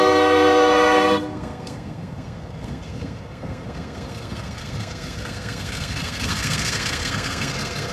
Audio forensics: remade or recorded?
remade